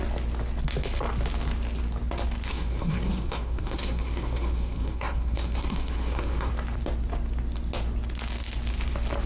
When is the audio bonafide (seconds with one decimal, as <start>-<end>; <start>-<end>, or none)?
0.0-2.5; 6.5-9.3